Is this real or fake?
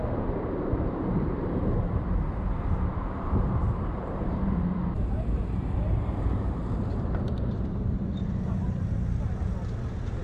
fake